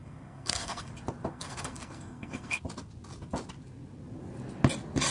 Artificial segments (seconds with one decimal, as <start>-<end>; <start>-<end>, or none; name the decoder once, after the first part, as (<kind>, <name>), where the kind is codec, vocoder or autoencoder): 0.0-0.9 (codec, SNAC); 1.3-2.6